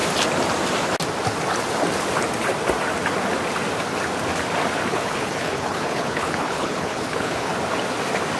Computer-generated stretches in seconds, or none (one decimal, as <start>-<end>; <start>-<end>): 4.9-7.5